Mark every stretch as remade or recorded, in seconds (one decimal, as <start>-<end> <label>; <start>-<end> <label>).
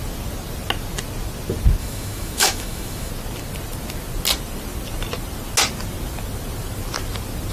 0.0-1.8 recorded; 1.8-3.1 remade; 3.1-7.5 recorded